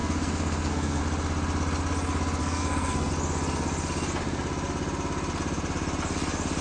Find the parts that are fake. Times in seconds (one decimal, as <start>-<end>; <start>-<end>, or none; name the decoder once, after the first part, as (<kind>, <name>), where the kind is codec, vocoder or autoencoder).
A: 0.0-1.0 (codec, SNAC); 2.4-3.1